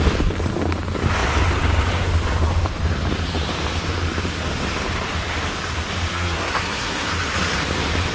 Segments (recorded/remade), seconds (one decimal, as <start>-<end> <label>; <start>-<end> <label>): 0.0-6.1 recorded; 6.1-7.1 remade; 7.1-8.1 recorded